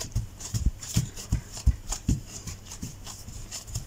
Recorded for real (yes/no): no